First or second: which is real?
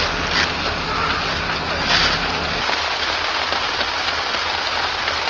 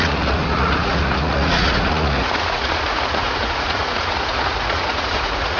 first